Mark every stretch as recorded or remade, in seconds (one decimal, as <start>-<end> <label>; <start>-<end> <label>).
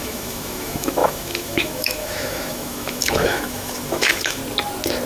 0.0-4.4 remade; 4.4-5.1 recorded